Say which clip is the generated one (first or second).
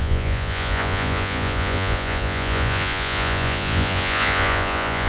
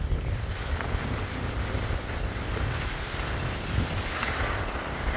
first